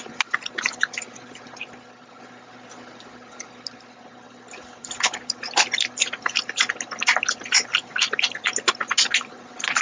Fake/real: real